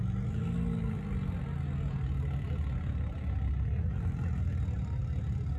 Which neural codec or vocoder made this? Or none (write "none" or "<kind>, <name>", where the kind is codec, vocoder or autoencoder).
none